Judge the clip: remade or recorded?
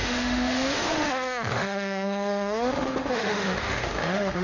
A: remade